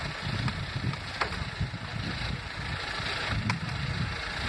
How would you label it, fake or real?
real